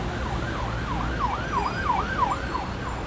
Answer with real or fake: real